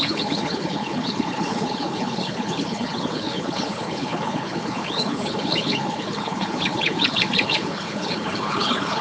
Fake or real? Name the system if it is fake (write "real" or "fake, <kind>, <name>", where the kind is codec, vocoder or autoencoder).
fake, codec, HILCodec